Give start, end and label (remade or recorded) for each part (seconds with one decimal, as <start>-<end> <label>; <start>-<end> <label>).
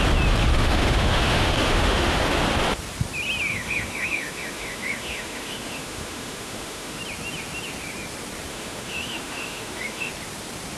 0.0-0.5 recorded; 0.5-2.2 remade; 2.2-3.5 recorded; 3.5-7.0 remade; 7.0-8.5 recorded; 8.5-10.1 remade; 10.1-10.8 recorded